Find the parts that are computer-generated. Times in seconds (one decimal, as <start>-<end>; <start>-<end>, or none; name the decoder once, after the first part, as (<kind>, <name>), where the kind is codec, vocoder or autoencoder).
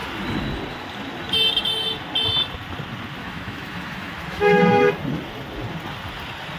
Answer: 3.2-4.9 (autoencoder, DAC-VAE)